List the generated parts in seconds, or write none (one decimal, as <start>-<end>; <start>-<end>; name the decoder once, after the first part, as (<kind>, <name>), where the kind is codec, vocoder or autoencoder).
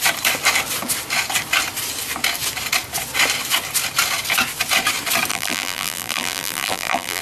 5.3-7.2 (vocoder, BigVGAN v2)